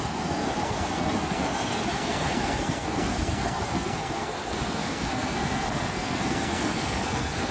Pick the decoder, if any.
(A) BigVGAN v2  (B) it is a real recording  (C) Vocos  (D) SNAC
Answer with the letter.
D